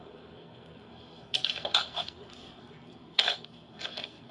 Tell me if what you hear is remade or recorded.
remade